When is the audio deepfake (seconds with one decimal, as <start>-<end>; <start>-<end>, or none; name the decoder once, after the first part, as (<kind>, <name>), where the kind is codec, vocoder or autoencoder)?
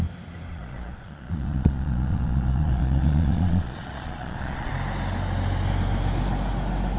0.5-4.7 (vocoder, Vocos)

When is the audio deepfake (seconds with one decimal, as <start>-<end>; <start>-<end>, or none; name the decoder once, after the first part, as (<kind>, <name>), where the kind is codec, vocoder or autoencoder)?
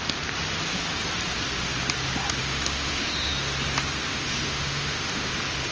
2.4-3.3 (autoencoder, DAC-VAE); 4.1-5.3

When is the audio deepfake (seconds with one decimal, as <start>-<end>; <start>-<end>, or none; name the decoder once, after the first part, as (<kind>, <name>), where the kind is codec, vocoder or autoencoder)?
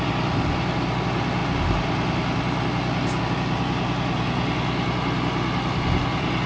none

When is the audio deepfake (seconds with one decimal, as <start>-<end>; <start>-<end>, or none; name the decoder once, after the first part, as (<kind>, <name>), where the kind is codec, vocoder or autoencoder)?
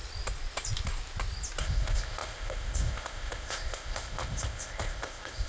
1.6-5.5 (codec, ZipCodec)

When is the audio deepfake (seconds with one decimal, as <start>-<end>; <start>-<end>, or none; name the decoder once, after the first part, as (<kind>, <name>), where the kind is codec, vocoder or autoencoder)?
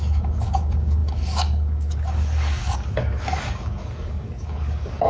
0.0-5.1 (codec, DAC)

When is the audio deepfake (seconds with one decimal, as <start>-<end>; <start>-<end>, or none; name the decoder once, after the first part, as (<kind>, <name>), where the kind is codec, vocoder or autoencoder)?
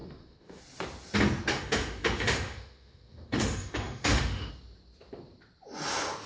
0.0-0.6 (autoencoder, DAC-VAE); 1.5-4.5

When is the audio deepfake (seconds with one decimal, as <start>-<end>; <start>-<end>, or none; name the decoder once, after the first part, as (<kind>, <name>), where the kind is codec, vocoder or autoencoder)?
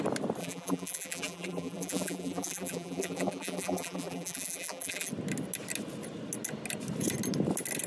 0.4-5.1 (vocoder, BigVGAN v2)